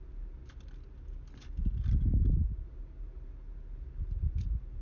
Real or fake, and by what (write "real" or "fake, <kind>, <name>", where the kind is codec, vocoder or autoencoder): real